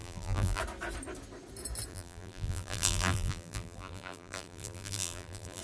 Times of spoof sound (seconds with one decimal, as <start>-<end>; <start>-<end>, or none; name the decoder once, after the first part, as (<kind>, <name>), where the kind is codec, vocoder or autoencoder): 0.0-0.6 (vocoder, BigVGAN v2); 1.9-5.6